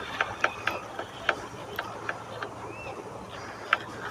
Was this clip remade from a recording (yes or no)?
no